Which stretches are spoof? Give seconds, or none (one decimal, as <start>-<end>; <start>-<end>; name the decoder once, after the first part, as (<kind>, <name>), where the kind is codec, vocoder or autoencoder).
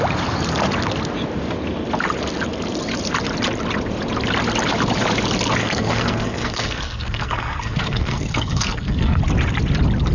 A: 5.6-9.2 (codec, SNAC)